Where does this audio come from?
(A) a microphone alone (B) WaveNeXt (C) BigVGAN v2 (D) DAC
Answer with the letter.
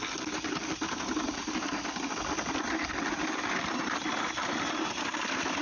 A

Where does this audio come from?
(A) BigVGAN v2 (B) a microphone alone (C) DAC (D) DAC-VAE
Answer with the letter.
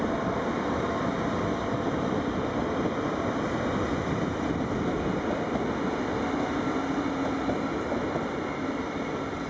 B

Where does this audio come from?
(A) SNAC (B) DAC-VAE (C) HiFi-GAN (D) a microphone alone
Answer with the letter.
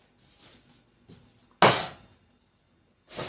D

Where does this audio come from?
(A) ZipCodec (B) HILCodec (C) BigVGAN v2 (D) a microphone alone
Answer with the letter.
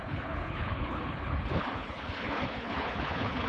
B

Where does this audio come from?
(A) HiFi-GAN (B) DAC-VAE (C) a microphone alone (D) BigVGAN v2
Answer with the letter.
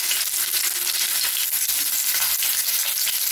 C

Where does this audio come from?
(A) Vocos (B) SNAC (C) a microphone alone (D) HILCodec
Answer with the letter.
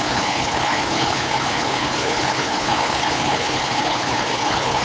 D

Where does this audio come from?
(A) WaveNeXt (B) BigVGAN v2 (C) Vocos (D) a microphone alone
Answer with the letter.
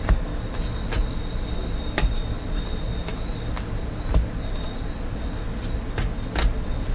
D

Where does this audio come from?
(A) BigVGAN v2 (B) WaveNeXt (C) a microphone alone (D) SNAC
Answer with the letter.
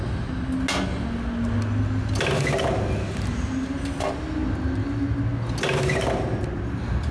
C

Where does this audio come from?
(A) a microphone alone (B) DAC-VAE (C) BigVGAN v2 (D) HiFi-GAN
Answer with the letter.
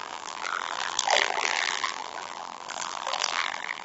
C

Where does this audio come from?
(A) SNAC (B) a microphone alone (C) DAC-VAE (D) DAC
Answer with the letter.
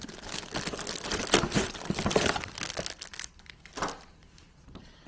B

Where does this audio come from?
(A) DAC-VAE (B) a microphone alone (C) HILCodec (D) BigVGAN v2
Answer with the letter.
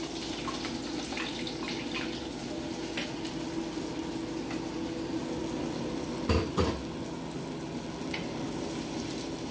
B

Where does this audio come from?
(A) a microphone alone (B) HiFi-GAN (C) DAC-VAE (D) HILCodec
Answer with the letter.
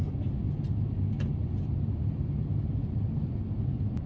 A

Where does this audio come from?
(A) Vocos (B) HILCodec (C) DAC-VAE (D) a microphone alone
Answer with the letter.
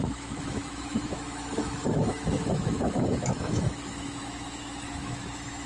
C